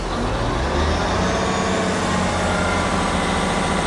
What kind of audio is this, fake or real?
real